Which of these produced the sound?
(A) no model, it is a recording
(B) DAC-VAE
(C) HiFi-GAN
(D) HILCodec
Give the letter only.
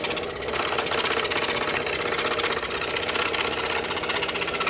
A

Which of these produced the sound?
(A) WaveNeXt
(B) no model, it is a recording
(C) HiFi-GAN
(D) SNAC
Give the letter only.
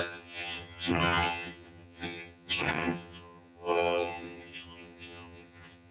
C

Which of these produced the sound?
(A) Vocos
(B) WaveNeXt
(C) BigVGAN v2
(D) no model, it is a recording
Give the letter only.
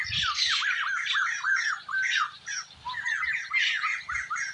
D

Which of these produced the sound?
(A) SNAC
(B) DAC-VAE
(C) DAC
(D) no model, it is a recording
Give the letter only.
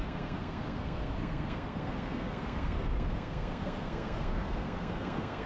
A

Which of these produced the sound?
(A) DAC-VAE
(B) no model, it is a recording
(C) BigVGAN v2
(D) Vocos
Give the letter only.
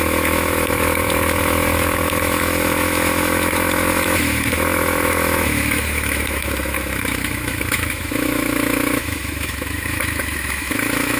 A